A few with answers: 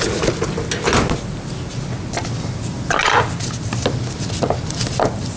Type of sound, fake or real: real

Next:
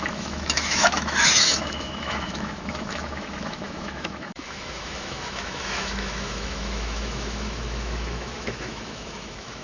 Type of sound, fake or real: fake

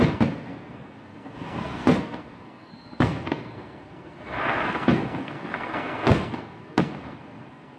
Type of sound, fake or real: fake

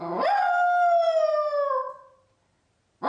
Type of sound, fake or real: real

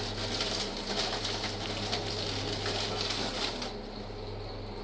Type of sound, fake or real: real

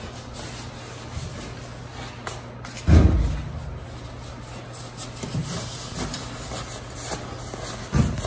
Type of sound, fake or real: real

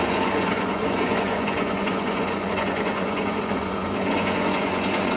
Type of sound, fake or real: fake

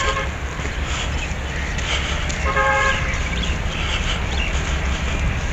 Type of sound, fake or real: real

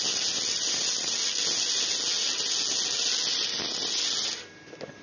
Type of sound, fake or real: real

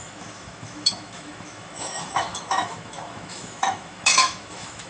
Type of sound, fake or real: fake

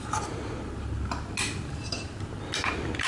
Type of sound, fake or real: fake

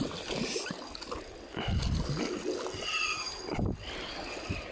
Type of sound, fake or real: real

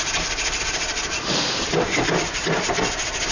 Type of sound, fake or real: real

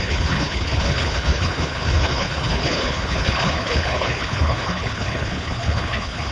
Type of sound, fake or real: fake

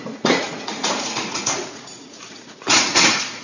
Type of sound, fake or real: fake